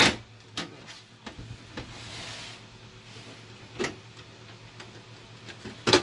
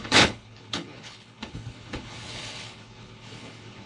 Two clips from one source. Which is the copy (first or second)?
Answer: second